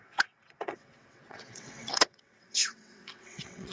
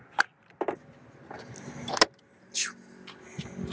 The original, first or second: second